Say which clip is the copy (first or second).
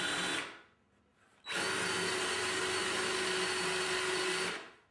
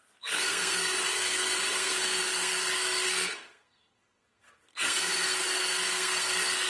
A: second